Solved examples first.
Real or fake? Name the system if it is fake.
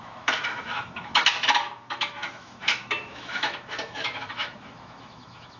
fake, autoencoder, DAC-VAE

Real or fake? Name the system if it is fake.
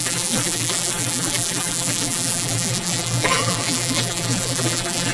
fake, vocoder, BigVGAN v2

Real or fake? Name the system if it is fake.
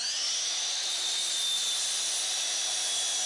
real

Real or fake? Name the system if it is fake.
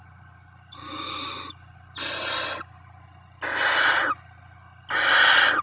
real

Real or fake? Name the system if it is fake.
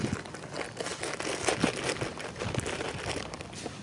real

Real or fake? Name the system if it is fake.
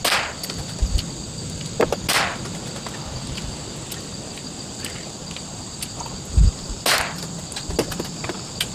real